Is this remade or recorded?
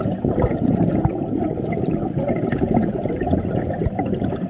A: recorded